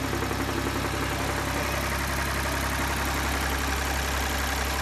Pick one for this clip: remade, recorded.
recorded